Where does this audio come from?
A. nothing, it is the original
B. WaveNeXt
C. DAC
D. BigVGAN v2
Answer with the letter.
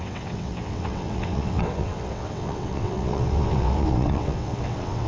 B